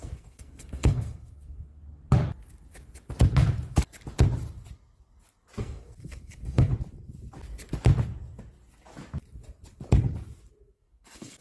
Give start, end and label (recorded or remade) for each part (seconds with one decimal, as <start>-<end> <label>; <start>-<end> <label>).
0.0-1.8 remade; 1.8-5.6 recorded; 5.6-6.7 remade; 6.7-10.6 recorded; 10.6-11.4 remade